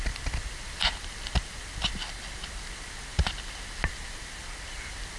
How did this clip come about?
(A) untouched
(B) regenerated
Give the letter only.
A